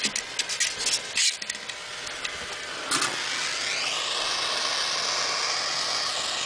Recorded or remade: recorded